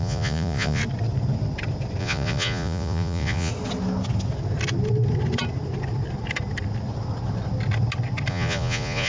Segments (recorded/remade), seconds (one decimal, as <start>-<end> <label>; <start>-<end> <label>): 0.0-0.8 remade; 0.8-2.0 recorded; 2.0-3.5 remade; 3.5-8.3 recorded; 8.3-9.1 remade